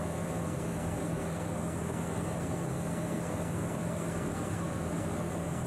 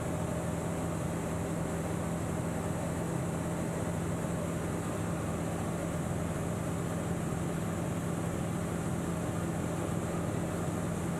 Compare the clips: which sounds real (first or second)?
second